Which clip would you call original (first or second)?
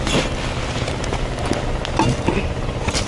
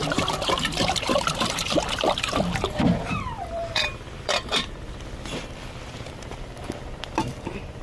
first